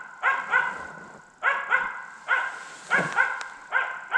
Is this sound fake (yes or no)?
no